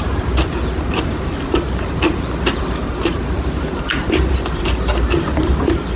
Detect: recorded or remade recorded